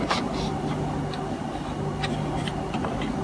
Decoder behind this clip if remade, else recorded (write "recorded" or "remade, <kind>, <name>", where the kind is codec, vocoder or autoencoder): recorded